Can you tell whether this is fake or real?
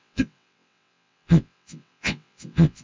fake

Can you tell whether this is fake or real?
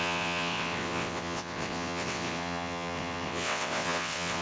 fake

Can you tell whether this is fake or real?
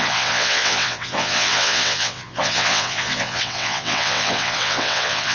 fake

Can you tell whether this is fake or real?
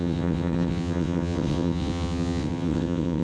fake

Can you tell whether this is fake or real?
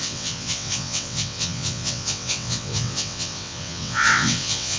fake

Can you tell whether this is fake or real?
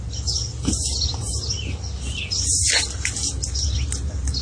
real